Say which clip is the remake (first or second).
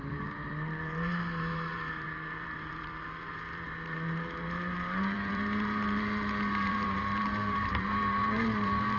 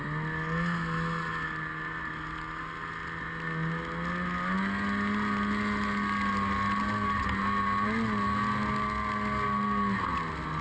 first